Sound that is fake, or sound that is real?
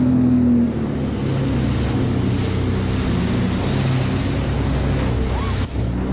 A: real